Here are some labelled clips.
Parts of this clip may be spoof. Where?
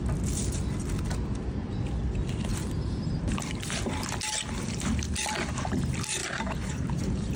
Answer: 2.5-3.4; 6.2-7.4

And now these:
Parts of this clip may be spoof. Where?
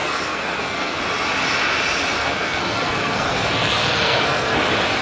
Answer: 0.0-1.0; 2.2-4.6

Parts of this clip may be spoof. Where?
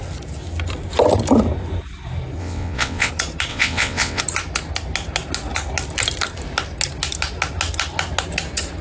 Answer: 2.4-3.1; 3.5-4.2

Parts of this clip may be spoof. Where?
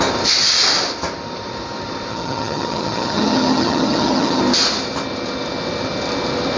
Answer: 2.1-4.4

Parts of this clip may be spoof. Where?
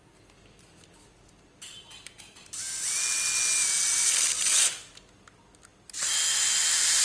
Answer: none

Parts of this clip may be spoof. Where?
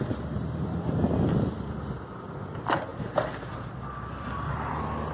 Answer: none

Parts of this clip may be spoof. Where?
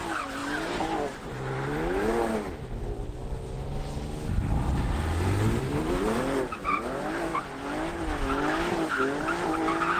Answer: none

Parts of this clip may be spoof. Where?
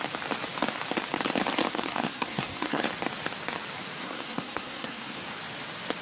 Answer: 1.7-2.9; 4.0-5.2